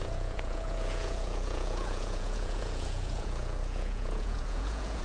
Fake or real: fake